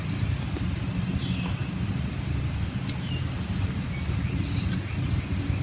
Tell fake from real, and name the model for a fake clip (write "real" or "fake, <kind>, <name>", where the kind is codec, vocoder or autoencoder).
real